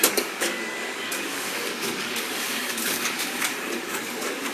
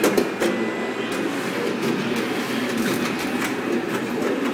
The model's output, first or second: first